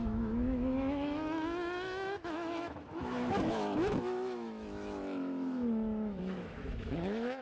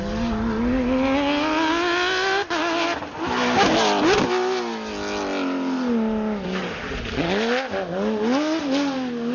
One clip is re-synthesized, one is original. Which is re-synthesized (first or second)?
first